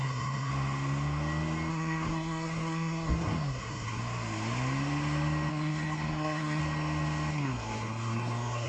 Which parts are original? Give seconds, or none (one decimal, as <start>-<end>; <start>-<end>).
0.5-1.7; 4.0-5.5; 6.6-7.3